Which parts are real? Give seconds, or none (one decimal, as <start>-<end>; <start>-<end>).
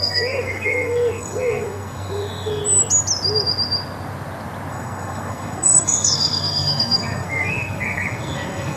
2.6-4.7